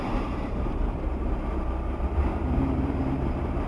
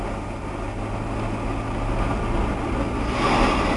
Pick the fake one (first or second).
first